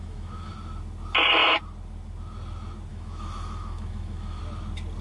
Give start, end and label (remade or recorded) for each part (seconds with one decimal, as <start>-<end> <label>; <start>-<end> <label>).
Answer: 0.0-0.5 remade; 0.5-2.9 recorded; 2.9-4.4 remade; 4.4-5.0 recorded